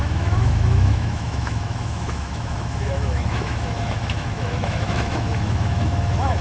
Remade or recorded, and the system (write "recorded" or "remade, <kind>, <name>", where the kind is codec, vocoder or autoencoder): remade, autoencoder, DAC-VAE